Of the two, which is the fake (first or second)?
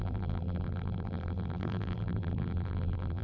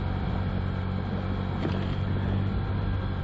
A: first